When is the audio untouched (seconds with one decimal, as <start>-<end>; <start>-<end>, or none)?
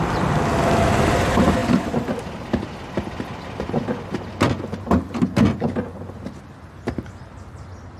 0.0-8.0